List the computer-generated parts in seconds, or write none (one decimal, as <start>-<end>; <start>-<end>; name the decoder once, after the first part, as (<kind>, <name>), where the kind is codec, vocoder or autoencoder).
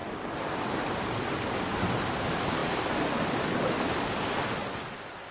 none